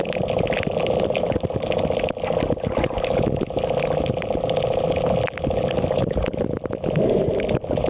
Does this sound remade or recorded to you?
recorded